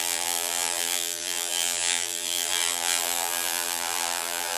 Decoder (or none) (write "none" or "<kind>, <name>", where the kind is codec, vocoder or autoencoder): vocoder, BigVGAN v2